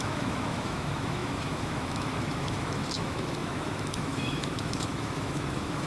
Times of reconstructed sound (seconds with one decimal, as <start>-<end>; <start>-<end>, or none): 0.0-5.9